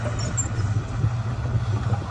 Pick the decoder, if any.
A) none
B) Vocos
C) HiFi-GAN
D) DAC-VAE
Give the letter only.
A